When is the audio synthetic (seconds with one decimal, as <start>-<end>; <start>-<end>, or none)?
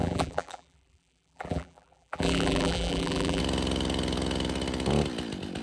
0.0-3.4